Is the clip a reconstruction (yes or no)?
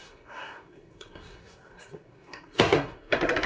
yes